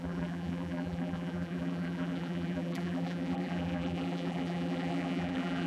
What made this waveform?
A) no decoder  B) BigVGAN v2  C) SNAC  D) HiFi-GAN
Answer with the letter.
B